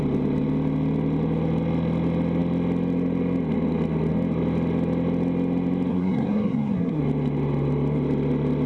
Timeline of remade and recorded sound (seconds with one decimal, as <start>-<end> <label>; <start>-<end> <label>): 0.0-5.9 recorded; 5.9-7.0 remade; 7.0-8.7 recorded